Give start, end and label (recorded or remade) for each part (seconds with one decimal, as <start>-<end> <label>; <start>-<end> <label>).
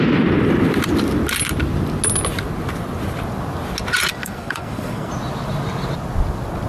0.0-4.1 recorded; 4.1-5.1 remade; 5.1-6.7 recorded